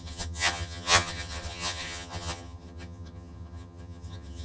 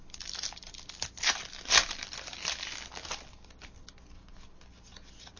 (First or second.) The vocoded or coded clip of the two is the first